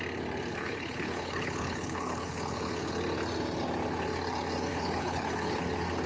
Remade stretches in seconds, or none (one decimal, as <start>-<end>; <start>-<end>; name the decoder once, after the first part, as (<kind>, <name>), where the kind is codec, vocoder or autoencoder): 0.5-2.9 (codec, HILCodec); 4.7-5.6